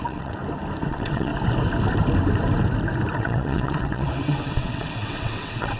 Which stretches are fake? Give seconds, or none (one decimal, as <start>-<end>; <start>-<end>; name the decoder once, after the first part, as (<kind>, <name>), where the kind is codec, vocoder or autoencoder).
0.0-0.4 (vocoder, WaveNeXt); 0.9-1.3; 3.2-5.8